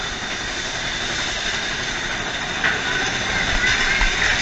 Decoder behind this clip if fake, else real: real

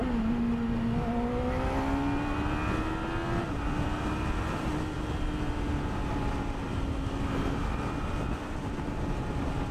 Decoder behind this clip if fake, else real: real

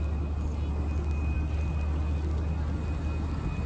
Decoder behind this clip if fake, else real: real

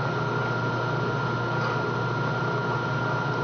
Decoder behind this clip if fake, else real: real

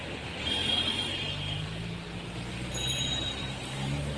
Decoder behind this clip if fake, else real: fake, vocoder, BigVGAN v2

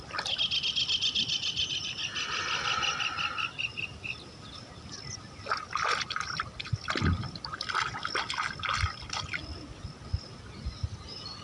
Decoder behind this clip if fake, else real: real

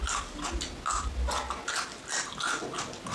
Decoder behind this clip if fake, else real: real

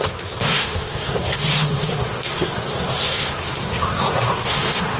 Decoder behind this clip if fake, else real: fake, codec, SNAC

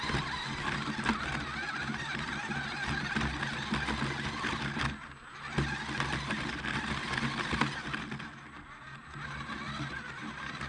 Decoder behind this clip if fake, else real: real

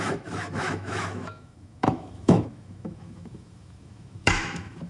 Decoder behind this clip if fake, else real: fake, autoencoder, DAC-VAE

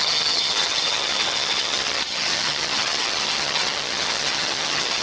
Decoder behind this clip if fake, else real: fake, vocoder, HiFi-GAN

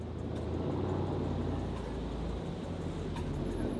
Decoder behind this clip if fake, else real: real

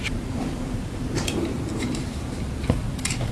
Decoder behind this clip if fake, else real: fake, vocoder, BigVGAN v2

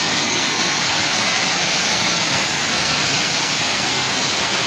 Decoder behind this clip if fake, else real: fake, codec, SNAC